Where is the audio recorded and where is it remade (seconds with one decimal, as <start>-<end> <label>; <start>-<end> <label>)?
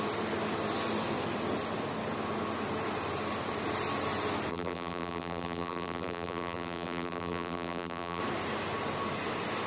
0.0-4.5 recorded; 4.5-8.2 remade; 8.2-9.7 recorded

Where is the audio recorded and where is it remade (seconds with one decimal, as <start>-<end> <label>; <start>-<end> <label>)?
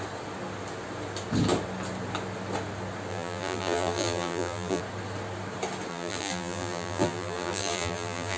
0.0-3.1 recorded; 3.1-4.8 remade; 4.8-5.9 recorded; 5.9-8.4 remade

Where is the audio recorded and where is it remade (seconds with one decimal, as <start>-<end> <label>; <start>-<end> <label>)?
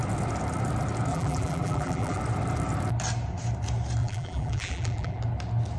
0.0-1.1 recorded; 1.1-2.2 remade; 2.2-4.0 recorded; 4.0-5.2 remade; 5.2-5.8 recorded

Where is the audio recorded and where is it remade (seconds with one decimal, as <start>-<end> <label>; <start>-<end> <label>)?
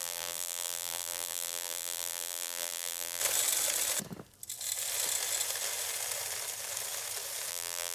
0.0-3.2 remade; 3.2-7.5 recorded; 7.5-7.9 remade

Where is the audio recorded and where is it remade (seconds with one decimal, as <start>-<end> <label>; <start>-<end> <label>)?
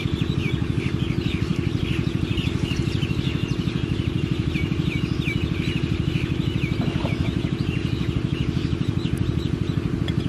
0.0-7.0 recorded; 7.0-8.1 remade; 8.1-10.3 recorded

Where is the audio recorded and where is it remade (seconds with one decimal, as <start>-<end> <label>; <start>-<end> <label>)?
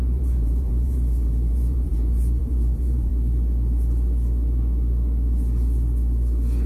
0.0-3.1 remade; 3.1-6.7 recorded